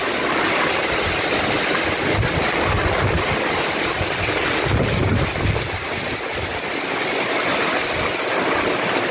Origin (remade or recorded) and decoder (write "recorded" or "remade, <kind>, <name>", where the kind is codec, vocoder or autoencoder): recorded